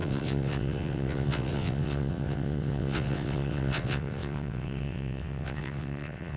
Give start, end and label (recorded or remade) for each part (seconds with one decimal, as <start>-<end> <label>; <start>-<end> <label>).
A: 0.0-6.4 remade